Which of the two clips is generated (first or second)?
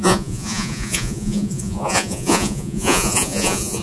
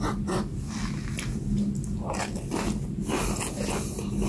first